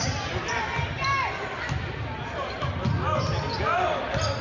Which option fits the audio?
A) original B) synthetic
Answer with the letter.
A